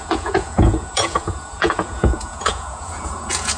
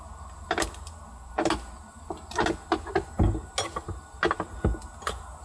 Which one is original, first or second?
second